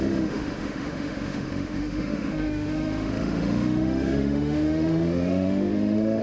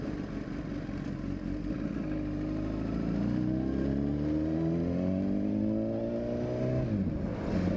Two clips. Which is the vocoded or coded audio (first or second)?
first